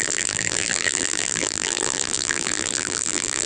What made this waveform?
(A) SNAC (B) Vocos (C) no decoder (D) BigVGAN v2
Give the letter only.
D